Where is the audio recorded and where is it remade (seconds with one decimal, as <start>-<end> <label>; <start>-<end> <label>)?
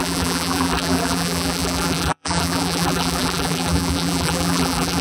0.0-5.0 remade